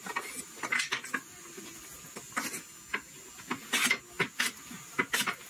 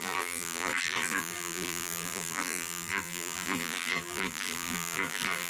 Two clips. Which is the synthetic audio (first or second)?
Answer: second